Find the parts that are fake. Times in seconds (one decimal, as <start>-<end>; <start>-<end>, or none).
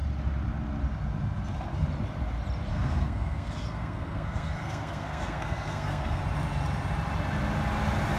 2.7-6.2